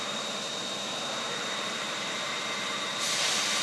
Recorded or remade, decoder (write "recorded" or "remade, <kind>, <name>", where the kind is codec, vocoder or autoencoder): remade, vocoder, BigVGAN v2